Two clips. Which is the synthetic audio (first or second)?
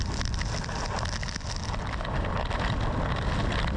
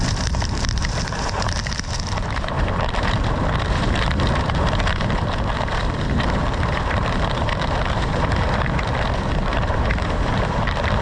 second